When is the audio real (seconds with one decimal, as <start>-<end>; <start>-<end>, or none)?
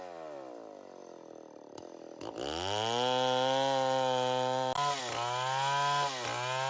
0.0-6.7